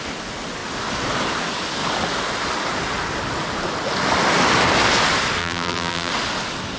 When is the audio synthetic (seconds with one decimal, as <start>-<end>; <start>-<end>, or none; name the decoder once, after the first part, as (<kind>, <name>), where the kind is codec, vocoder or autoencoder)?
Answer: 5.4-6.1 (vocoder, BigVGAN v2)